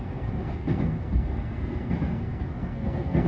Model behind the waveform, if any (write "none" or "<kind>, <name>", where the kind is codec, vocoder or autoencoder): codec, SNAC